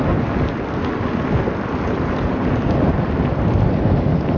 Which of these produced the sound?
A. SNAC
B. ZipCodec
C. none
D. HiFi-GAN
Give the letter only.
C